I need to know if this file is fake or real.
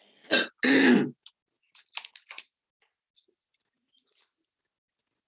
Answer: real